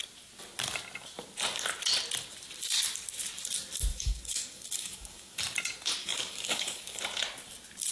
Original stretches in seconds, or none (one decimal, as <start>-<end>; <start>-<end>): 0.0-3.9; 5.4-6.0; 7.0-7.9